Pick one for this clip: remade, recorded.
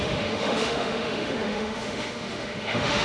remade